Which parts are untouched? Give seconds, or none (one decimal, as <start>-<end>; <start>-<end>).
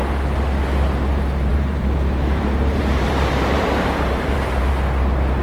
0.0-1.5; 4.7-5.4